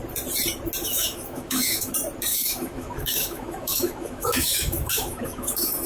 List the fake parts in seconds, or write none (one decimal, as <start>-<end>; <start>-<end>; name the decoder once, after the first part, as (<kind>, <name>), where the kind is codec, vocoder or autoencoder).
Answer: 0.8-1.9 (autoencoder, DAC-VAE); 2.3-5.9